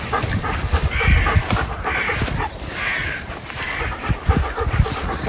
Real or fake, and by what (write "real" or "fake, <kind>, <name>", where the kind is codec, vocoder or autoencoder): fake, vocoder, BigVGAN v2